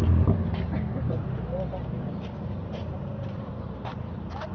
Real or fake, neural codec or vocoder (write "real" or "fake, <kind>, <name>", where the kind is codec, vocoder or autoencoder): real